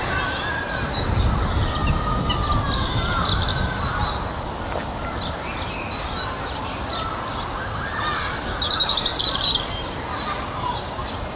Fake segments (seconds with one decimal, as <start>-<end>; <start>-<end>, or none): none

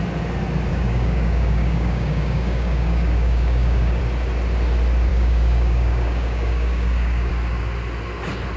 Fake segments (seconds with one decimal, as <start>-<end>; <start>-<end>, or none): 0.7-4.0; 5.1-7.3

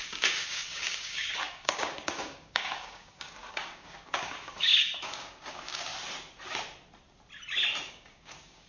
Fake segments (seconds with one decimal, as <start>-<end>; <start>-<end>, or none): 0.0-5.9; 7.9-8.7

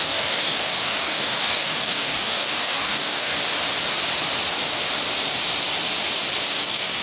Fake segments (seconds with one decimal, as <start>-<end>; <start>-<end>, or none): 0.0-3.3; 6.5-7.0

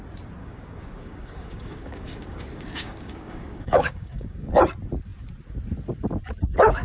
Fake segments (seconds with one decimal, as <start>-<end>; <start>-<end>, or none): 0.4-4.5